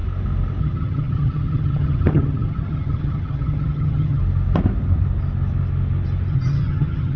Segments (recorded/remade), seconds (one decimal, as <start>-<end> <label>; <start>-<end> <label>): 0.0-0.6 recorded; 0.6-4.2 remade; 4.2-6.3 recorded; 6.3-7.2 remade